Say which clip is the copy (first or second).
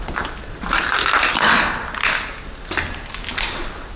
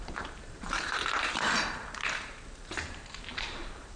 second